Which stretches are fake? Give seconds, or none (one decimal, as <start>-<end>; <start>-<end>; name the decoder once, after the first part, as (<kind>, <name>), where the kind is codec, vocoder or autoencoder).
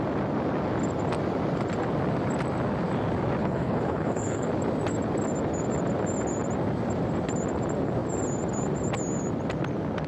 3.4-4.5 (codec, HILCodec)